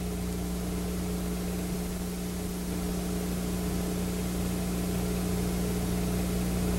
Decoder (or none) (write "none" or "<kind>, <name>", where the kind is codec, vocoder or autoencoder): none